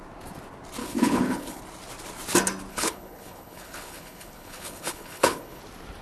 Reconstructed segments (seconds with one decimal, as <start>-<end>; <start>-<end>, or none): 0.8-1.6; 2.7-5.6